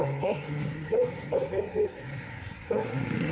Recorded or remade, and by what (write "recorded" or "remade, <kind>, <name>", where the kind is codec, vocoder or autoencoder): remade, codec, SNAC